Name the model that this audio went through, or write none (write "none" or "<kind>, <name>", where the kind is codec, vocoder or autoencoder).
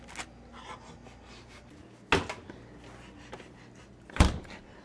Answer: none